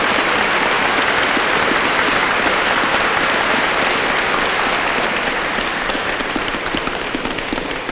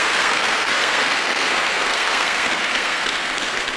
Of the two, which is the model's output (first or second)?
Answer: second